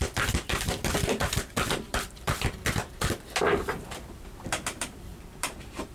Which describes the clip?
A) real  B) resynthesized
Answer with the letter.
B